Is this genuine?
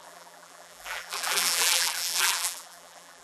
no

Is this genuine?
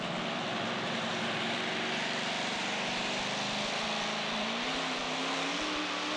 no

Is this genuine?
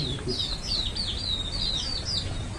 yes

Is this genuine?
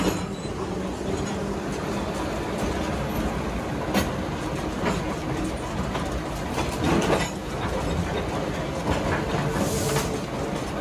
yes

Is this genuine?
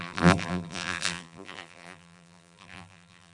no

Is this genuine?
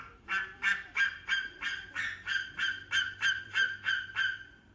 no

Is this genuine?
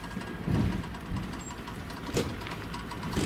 no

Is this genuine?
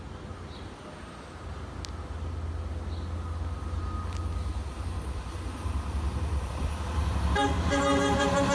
yes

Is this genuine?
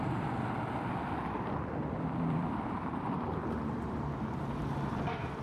no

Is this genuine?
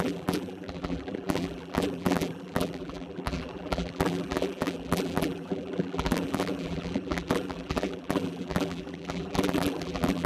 no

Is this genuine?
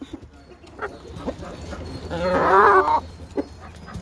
yes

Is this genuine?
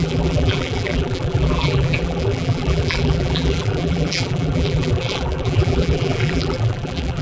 no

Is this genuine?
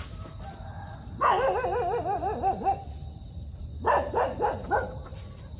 no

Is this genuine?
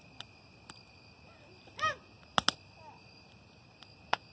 yes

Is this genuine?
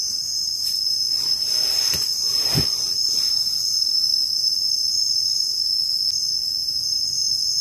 yes